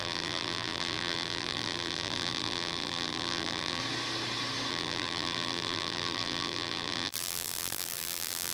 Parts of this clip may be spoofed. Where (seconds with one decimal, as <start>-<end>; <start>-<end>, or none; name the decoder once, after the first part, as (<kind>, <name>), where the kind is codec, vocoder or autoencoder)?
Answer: 0.0-3.8 (vocoder, BigVGAN v2); 4.7-8.5